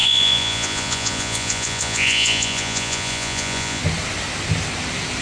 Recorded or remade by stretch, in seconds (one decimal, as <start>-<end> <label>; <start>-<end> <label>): 0.0-3.8 remade; 3.8-5.2 recorded